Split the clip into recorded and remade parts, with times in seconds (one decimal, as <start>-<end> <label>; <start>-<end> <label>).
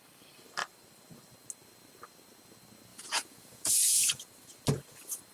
0.0-2.9 recorded; 2.9-4.1 remade; 4.1-5.3 recorded